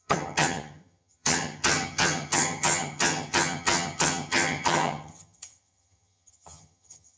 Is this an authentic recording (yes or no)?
no